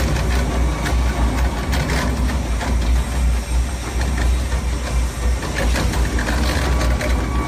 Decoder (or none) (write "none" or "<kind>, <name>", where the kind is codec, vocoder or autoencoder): none